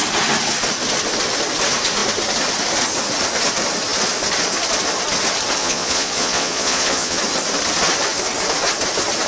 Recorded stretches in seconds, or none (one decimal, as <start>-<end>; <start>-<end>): 0.0-5.6; 7.2-9.3